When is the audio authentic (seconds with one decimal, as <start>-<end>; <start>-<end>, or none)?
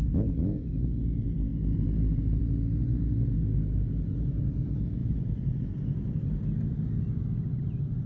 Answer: 0.0-5.0; 7.2-8.1